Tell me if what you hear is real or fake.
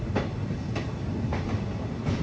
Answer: real